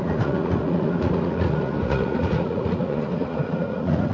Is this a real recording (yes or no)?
no